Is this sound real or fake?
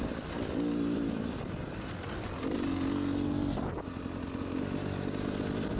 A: real